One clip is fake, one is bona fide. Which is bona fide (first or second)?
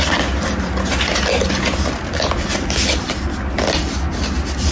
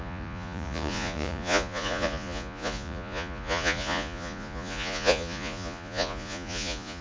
first